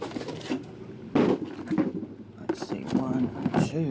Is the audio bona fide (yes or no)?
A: yes